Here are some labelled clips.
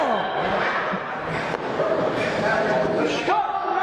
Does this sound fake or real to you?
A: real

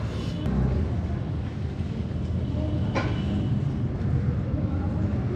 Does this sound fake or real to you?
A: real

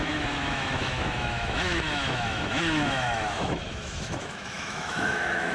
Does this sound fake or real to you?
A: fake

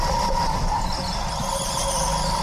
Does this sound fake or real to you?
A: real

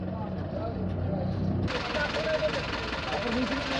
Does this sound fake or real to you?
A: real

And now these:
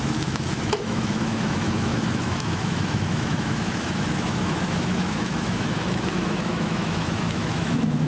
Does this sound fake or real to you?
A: fake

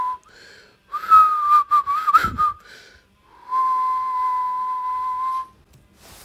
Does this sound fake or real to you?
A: real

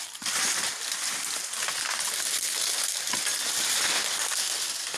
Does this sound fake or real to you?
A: real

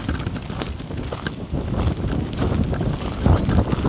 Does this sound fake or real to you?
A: real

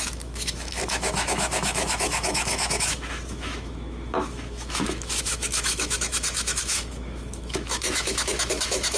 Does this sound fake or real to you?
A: fake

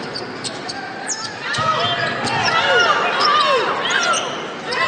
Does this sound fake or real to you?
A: real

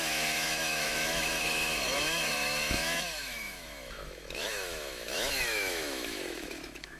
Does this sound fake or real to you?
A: fake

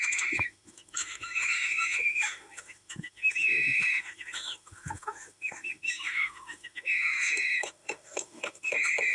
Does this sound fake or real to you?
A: fake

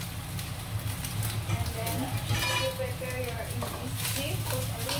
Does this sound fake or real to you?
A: real